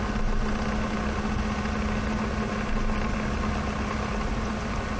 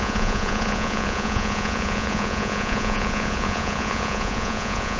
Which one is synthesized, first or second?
second